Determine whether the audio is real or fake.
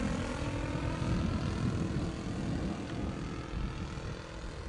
real